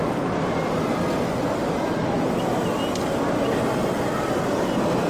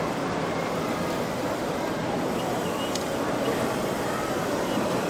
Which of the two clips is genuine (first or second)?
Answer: first